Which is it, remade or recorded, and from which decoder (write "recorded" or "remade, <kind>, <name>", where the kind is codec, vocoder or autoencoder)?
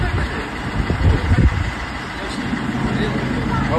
recorded